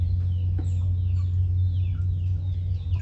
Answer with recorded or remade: recorded